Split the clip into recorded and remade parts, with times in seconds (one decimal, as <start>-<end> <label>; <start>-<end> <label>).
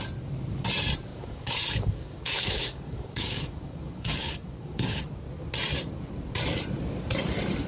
0.0-1.1 recorded; 1.1-5.0 remade; 5.0-7.7 recorded